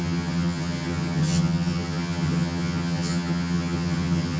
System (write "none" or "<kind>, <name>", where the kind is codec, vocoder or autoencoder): vocoder, HiFi-GAN